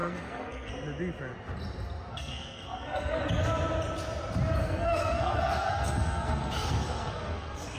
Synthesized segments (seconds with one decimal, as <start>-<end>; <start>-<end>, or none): 0.0-0.7; 2.1-3.2; 4.6-7.8